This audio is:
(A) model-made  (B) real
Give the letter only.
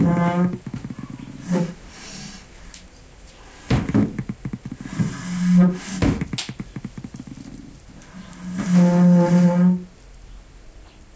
B